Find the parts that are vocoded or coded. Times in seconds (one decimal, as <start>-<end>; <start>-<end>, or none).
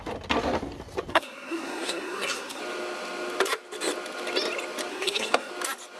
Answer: 1.1-2.6; 4.9-5.5